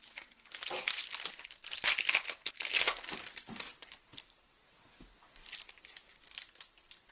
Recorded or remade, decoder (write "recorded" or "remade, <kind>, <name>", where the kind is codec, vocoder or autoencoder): recorded